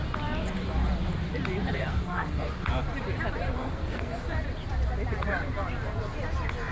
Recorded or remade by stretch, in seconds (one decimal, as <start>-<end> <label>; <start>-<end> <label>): 0.0-1.6 recorded; 1.6-2.5 remade; 2.5-3.5 recorded; 3.5-4.1 remade; 4.1-6.7 recorded